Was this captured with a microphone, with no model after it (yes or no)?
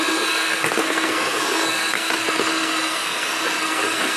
no